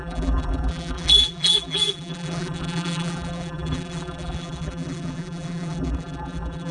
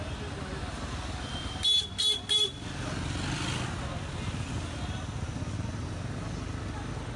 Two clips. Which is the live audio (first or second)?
second